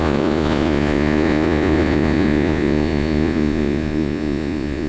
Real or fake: fake